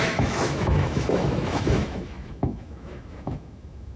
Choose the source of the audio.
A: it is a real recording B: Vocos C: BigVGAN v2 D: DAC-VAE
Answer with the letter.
D